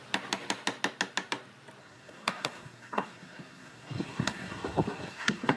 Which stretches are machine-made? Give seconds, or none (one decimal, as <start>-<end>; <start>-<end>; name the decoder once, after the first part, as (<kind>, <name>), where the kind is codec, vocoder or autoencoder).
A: 1.8-5.6 (codec, SNAC)